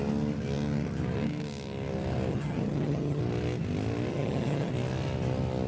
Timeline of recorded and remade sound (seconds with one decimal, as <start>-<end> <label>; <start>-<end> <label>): 0.0-2.3 recorded; 2.3-3.2 remade; 3.2-4.1 recorded; 4.1-4.7 remade; 4.7-5.7 recorded

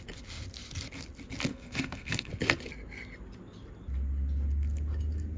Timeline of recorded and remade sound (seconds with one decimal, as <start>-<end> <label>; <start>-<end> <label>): 0.0-1.5 recorded; 1.5-2.3 remade; 2.3-5.4 recorded

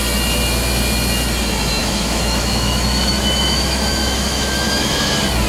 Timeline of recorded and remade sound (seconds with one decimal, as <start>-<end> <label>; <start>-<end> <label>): 0.0-1.8 recorded; 1.8-5.1 remade; 5.1-5.5 recorded